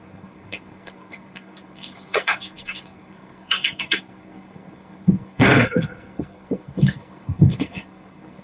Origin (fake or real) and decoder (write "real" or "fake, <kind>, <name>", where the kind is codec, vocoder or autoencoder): fake, codec, SNAC